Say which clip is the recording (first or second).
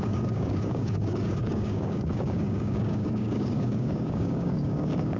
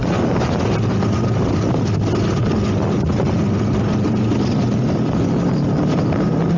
second